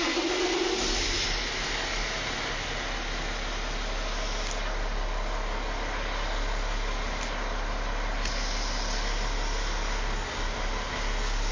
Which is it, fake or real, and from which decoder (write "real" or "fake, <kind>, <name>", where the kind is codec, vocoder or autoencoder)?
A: real